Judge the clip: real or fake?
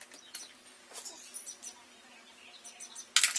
real